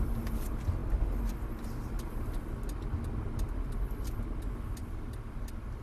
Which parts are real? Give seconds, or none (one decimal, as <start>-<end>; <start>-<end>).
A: 0.0-4.8